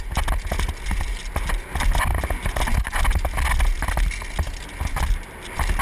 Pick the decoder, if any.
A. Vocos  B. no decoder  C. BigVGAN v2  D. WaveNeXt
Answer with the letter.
B